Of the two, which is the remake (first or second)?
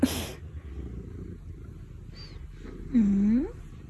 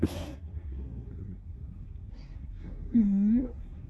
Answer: second